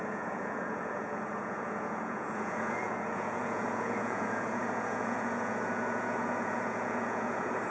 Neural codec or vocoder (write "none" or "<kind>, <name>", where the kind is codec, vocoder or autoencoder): vocoder, Vocos